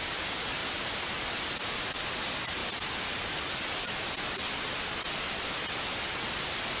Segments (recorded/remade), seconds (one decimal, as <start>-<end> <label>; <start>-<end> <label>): 0.0-6.8 recorded